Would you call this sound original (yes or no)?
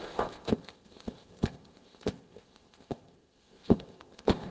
no